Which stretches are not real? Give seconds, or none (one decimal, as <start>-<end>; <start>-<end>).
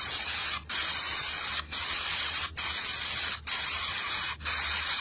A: none